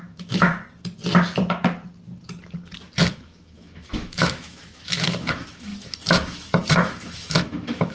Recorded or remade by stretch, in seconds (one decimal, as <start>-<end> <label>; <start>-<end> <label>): 0.0-0.5 remade; 0.5-3.1 recorded; 3.1-7.9 remade